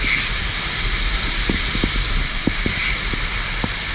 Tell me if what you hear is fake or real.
real